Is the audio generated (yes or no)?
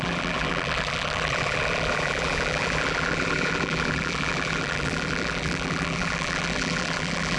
yes